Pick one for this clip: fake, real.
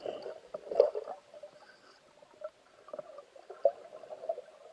real